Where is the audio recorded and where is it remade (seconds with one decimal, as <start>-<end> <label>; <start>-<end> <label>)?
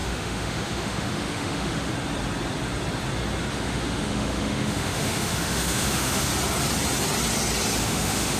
0.0-1.9 remade; 1.9-3.5 recorded; 3.5-6.3 remade; 6.3-7.8 recorded; 7.8-8.4 remade